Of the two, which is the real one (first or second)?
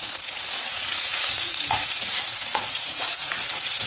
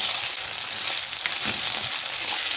second